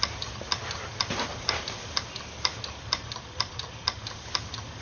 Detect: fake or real real